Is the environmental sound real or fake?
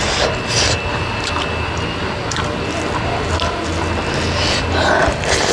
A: real